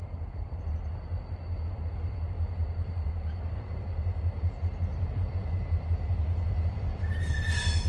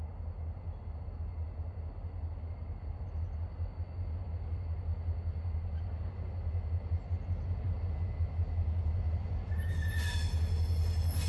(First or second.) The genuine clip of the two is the second